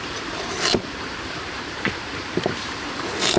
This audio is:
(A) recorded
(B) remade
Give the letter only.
B